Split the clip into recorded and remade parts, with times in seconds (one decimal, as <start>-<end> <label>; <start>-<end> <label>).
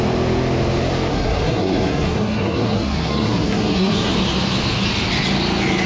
0.0-1.1 recorded; 1.1-4.1 remade; 4.1-5.9 recorded